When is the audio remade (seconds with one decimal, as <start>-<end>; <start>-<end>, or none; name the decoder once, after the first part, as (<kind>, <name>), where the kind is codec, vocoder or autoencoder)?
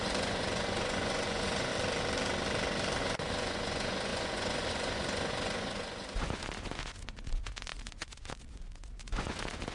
0.0-1.7 (vocoder, Vocos); 3.0-9.7